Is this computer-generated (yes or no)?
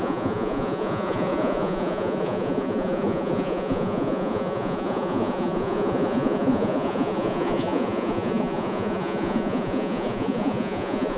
yes